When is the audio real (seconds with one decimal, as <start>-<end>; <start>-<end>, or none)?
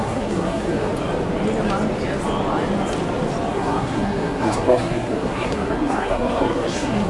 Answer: 0.9-3.5